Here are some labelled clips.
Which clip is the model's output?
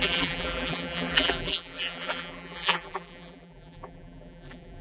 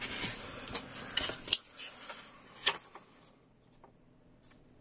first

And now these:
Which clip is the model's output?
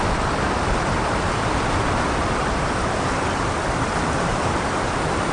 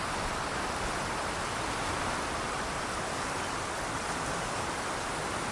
first